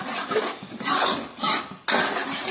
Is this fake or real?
real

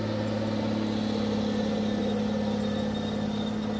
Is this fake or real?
real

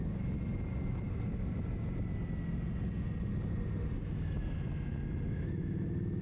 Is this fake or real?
real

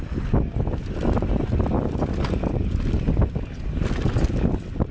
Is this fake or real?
real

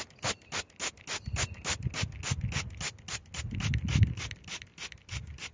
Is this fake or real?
real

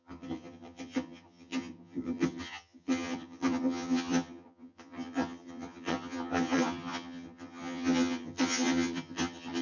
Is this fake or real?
fake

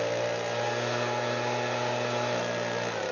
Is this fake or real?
real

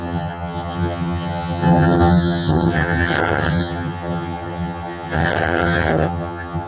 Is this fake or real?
fake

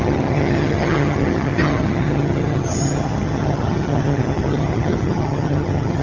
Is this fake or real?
fake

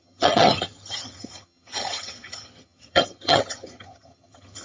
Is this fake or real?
fake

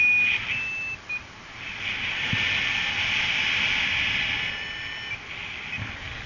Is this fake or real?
real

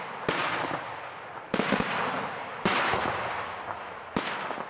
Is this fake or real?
real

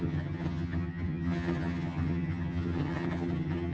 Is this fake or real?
fake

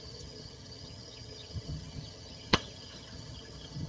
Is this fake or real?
fake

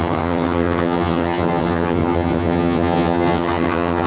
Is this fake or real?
fake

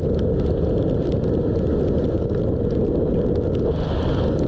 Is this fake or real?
real